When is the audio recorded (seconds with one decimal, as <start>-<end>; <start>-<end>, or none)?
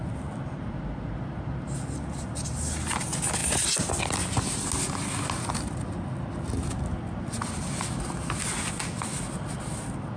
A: 0.0-10.2